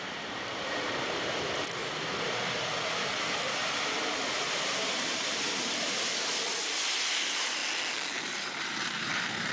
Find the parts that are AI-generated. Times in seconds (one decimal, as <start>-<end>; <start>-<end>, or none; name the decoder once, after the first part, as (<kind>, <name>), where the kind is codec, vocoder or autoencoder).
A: 0.0-1.8 (vocoder, BigVGAN v2); 4.4-7.6; 8.2-9.5